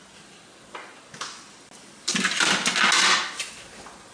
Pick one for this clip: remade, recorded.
recorded